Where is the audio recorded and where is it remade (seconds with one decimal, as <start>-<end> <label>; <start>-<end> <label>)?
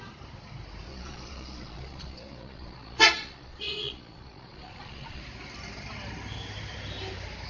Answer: 0.0-0.9 recorded; 0.9-5.2 remade; 5.2-7.5 recorded